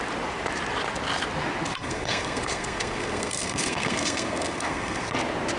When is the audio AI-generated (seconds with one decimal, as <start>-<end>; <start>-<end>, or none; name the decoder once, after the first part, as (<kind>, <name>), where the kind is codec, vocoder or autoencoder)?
1.7-5.1 (codec, SNAC)